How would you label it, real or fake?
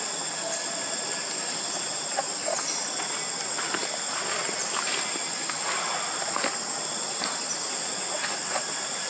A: real